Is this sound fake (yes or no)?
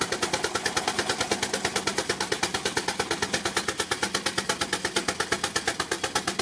no